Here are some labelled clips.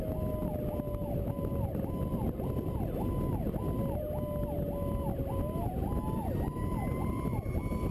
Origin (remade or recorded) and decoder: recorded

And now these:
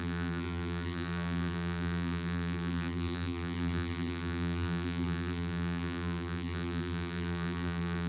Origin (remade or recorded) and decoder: remade, vocoder, BigVGAN v2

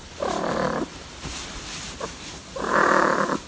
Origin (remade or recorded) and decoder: remade, vocoder, BigVGAN v2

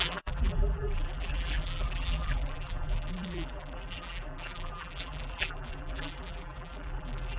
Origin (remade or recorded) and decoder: remade, vocoder, BigVGAN v2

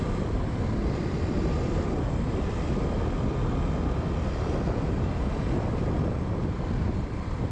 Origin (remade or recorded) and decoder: remade, vocoder, BigVGAN v2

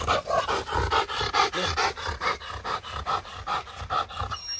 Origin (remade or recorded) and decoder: recorded